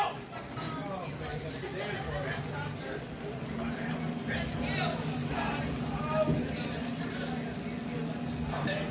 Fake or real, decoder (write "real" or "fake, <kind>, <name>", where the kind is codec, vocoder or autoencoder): real